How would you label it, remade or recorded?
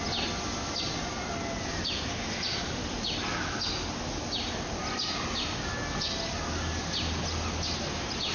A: recorded